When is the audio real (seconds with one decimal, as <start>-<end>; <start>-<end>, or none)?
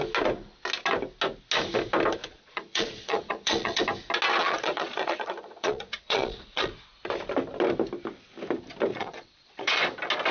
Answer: 0.0-2.2; 3.8-4.4; 6.7-8.9; 9.8-10.3